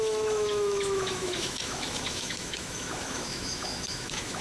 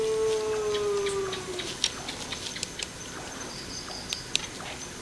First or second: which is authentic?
second